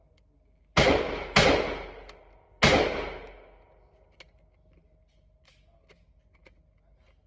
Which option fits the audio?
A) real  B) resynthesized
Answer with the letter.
A